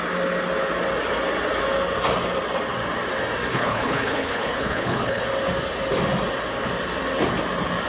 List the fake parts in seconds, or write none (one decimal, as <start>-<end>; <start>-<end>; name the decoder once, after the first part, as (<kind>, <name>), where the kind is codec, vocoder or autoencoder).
3.5-5.2 (codec, HILCodec)